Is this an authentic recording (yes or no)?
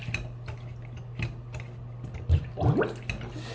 yes